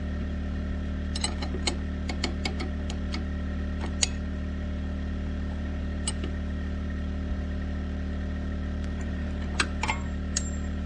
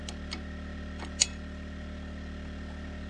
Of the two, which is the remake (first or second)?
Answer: first